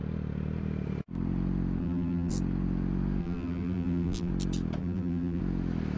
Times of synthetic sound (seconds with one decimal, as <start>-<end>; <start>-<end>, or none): 1.8-2.3; 3.2-4.3; 4.8-5.4